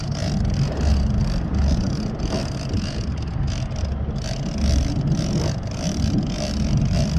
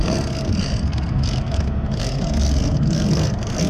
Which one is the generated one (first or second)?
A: second